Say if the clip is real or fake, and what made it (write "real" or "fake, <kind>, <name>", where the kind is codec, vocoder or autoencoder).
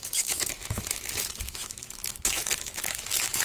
fake, autoencoder, DAC-VAE